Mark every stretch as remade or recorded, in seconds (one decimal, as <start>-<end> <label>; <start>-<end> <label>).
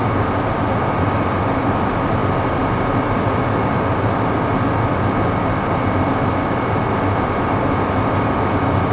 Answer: 0.0-8.9 recorded